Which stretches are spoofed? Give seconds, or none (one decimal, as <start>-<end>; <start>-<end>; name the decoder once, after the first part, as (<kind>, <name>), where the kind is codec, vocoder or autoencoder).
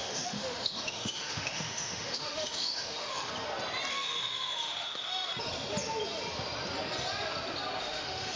0.0-3.3 (autoencoder, DAC-VAE); 3.9-5.3; 7.8-8.4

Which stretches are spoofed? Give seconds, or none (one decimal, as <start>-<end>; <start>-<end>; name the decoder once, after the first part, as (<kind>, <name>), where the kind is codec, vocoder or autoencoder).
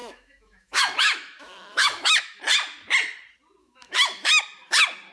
0.0-2.4 (autoencoder, DAC-VAE); 3.6-4.4